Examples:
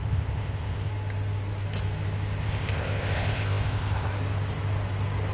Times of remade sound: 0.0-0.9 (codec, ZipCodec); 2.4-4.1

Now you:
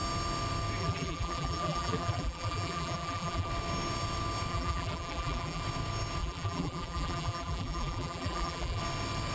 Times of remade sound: 0.8-3.5 (vocoder, BigVGAN v2); 4.5-5.6; 6.2-8.8

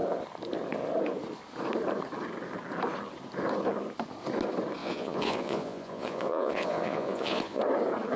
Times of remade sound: 4.8-7.6 (vocoder, Vocos)

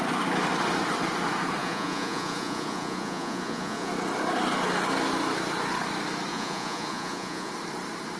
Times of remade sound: 1.6-3.9 (vocoder, Vocos); 6.3-7.5

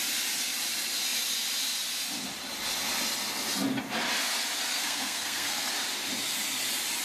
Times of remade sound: 4.7-5.7 (codec, SNAC)